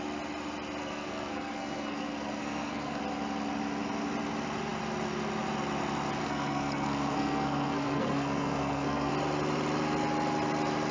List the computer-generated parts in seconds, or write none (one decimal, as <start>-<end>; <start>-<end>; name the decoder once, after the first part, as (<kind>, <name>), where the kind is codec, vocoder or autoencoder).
0.8-3.0 (codec, SNAC); 6.2-9.1